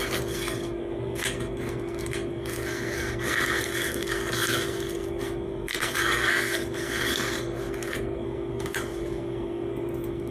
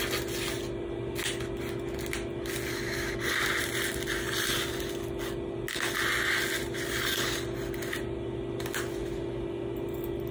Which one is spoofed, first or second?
first